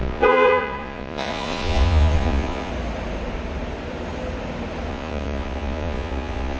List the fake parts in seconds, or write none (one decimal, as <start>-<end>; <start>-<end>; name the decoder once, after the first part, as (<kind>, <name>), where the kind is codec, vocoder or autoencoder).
0.0-2.7 (vocoder, Vocos); 4.9-6.6